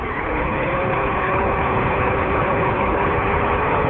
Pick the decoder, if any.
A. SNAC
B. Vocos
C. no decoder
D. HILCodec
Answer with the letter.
D